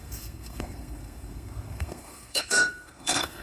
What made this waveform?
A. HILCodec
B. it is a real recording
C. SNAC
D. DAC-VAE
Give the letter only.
C